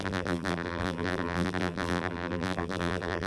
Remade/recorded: remade